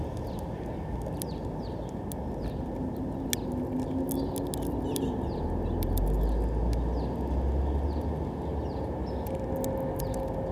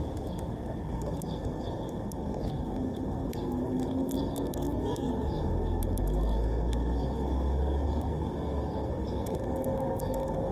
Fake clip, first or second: second